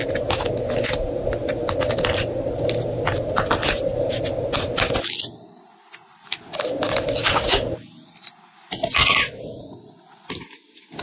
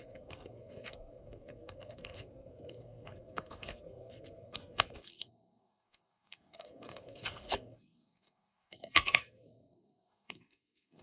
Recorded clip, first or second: first